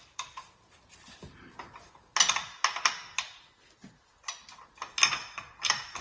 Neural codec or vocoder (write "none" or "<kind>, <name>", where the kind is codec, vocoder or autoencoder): none